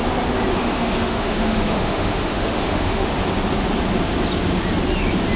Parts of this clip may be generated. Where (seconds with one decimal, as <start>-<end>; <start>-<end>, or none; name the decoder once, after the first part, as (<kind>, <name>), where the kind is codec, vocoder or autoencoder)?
0.5-3.1 (autoencoder, DAC-VAE)

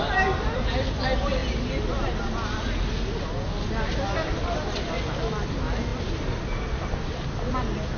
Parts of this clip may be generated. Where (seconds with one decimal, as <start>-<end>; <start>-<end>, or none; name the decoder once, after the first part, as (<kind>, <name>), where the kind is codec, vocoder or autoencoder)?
none

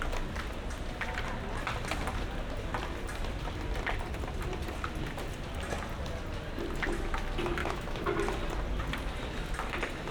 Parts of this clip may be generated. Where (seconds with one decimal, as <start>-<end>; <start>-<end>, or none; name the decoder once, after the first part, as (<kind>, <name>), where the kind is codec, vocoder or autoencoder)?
7.6-8.1 (autoencoder, DAC-VAE)